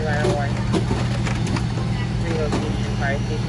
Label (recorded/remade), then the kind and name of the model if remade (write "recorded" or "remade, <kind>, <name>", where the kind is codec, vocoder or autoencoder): recorded